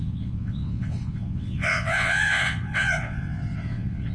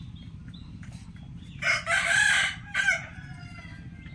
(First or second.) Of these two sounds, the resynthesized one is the first